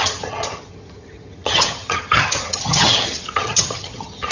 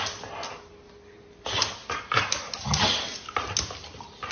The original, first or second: second